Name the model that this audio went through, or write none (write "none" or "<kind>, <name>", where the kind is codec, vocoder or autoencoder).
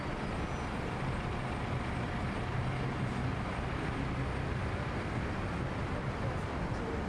none